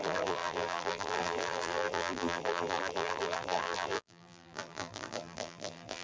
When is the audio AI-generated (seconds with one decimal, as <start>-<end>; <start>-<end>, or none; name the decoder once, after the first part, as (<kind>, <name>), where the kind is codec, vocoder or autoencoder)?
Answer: 0.0-6.0 (vocoder, BigVGAN v2)

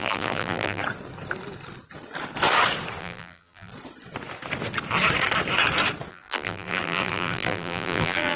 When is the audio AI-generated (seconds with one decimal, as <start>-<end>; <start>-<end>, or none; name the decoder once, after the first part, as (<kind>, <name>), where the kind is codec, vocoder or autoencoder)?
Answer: 0.0-0.8 (vocoder, BigVGAN v2); 3.0-3.7; 6.1-8.4